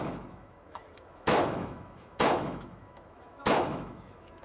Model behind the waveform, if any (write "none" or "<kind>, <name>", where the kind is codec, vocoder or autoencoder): autoencoder, DAC-VAE